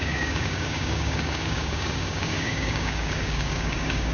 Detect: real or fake fake